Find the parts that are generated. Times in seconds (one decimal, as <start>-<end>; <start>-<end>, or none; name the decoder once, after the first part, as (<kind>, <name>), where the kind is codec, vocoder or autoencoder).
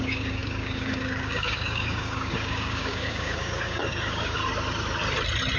0.0-4.4 (codec, DAC)